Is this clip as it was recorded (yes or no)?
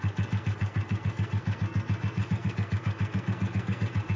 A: no